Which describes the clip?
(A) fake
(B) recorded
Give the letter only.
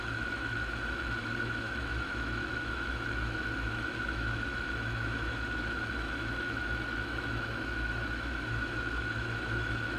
A